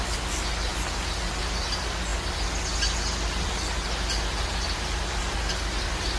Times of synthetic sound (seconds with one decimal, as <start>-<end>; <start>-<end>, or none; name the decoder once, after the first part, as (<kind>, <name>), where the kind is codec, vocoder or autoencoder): none